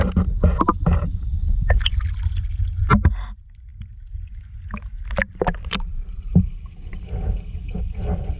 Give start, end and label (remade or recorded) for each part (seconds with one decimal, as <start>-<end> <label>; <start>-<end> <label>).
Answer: 0.0-0.7 recorded; 0.7-1.3 remade; 1.3-5.3 recorded; 5.3-7.1 remade; 7.1-8.4 recorded